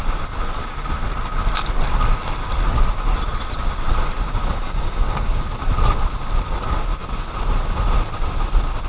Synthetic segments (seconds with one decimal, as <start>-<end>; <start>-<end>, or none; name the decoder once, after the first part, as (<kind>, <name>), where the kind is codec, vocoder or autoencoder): 4.4-5.4 (codec, DAC)